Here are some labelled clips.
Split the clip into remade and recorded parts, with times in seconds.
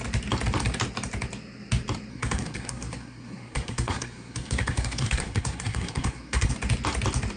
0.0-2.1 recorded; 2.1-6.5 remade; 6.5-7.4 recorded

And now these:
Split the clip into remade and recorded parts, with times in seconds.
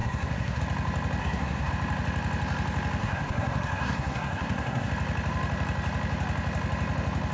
0.0-0.6 remade; 0.6-1.2 recorded; 1.2-1.7 remade; 1.7-3.0 recorded; 3.0-4.9 remade; 4.9-7.3 recorded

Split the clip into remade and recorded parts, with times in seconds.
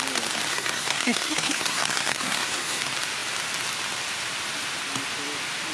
0.0-0.5 recorded; 0.5-2.8 remade; 2.8-5.7 recorded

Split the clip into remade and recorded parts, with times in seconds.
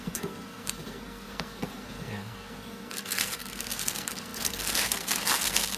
0.0-5.8 remade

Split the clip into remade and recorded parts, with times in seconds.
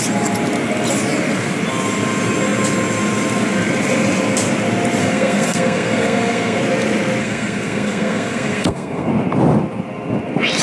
0.0-5.0 recorded; 5.0-6.6 remade; 6.6-7.2 recorded; 7.2-9.1 remade; 9.1-10.6 recorded